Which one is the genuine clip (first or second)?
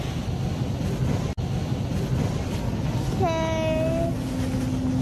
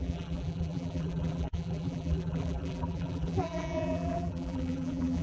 first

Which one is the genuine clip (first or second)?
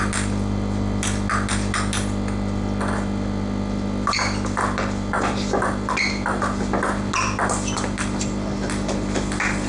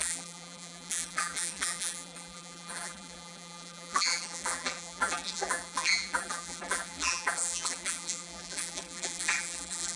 first